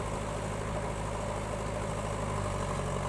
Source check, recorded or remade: recorded